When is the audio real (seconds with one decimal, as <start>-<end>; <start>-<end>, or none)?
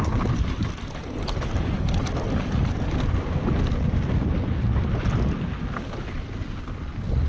0.0-7.3